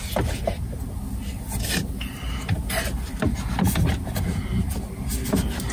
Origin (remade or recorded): recorded